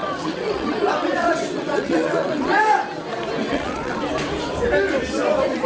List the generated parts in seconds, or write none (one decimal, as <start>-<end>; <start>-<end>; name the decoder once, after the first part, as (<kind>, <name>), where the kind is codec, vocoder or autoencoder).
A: 0.0-2.6 (vocoder, WaveNeXt); 3.4-4.0